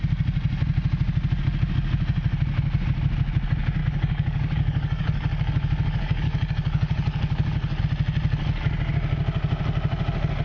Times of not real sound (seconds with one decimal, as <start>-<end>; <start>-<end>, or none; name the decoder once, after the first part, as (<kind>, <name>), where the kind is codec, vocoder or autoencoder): 3.8-7.8 (codec, DAC)

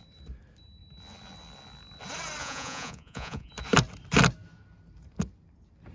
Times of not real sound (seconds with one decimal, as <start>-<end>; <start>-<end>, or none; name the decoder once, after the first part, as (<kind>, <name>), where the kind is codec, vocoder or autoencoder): 2.4-3.5 (vocoder, Vocos)